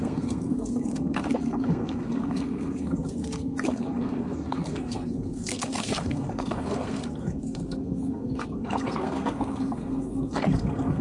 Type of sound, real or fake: fake